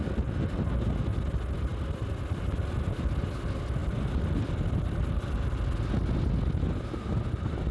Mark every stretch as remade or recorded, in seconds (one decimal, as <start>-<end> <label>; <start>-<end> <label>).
0.0-3.8 recorded; 3.8-5.4 remade; 5.4-7.7 recorded